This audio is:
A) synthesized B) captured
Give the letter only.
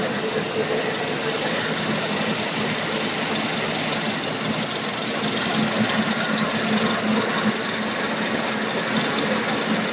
B